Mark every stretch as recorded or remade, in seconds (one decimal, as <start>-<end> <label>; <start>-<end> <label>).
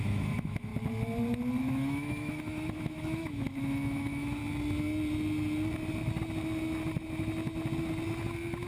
0.0-0.7 remade; 0.7-1.6 recorded; 1.6-4.4 remade; 4.4-8.7 recorded